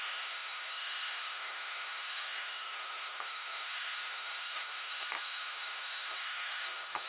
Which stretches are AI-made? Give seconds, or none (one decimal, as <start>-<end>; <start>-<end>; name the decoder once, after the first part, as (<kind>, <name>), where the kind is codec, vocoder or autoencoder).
0.0-7.1 (autoencoder, DAC-VAE)